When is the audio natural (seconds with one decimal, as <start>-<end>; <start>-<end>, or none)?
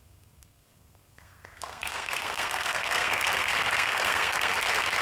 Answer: none